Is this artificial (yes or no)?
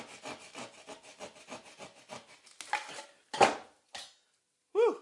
no